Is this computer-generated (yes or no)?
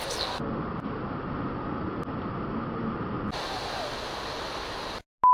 no